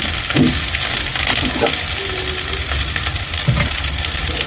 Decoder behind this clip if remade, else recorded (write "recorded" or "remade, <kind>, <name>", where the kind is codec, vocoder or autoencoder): recorded